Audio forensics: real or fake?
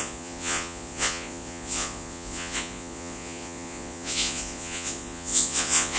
fake